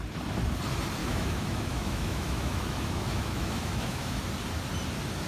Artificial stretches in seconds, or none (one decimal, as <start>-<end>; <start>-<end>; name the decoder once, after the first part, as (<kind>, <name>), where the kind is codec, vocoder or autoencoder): 1.0-4.2 (autoencoder, DAC-VAE)